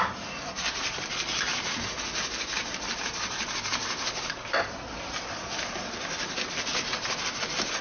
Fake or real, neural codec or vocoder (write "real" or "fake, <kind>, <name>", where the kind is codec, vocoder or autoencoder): real